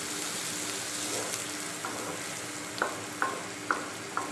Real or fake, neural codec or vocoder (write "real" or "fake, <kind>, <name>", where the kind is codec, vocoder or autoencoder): real